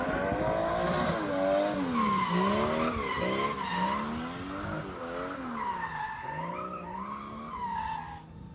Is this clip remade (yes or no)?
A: no